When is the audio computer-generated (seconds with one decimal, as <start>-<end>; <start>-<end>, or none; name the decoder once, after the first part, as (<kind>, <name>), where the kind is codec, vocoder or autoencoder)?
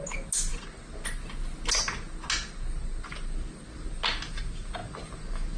none